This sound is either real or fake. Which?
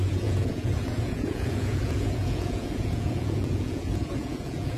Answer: fake